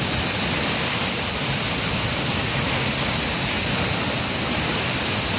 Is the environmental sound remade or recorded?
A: recorded